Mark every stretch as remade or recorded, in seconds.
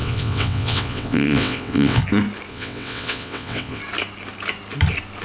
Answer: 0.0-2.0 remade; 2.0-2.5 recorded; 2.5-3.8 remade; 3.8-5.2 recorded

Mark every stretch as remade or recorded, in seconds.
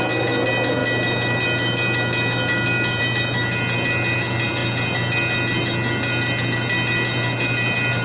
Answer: 0.0-8.0 recorded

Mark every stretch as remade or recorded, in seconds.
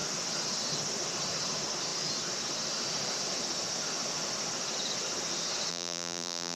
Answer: 0.0-5.7 recorded; 5.7-6.6 remade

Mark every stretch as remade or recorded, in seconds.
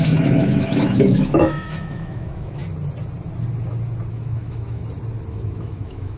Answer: 0.0-2.6 remade; 2.6-4.1 recorded; 4.1-4.8 remade; 4.8-5.3 recorded; 5.3-6.2 remade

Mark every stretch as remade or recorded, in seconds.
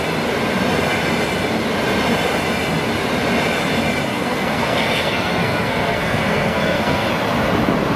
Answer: 0.0-4.1 recorded; 4.1-7.1 remade; 7.1-8.0 recorded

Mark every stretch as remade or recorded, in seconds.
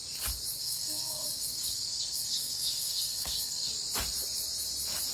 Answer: 0.0-0.6 recorded; 0.6-3.7 remade; 3.7-5.1 recorded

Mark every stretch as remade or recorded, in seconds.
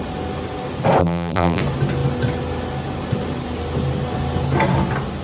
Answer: 0.0-1.0 recorded; 1.0-1.6 remade; 1.6-5.2 recorded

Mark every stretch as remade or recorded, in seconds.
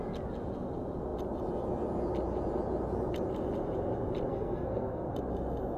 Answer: 0.0-4.3 recorded; 4.3-5.1 remade; 5.1-5.8 recorded